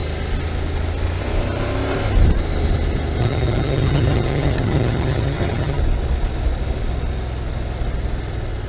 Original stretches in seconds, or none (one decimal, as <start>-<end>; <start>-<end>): 0.0-3.2; 5.8-8.7